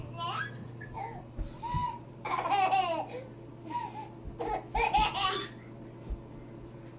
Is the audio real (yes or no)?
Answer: yes